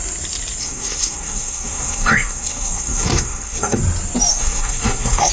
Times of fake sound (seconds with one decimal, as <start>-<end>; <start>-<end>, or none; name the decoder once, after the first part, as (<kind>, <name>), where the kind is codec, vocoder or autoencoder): 0.6-3.8 (codec, SNAC); 4.3-5.3